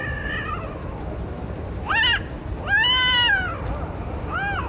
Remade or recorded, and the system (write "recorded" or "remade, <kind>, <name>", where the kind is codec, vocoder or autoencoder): recorded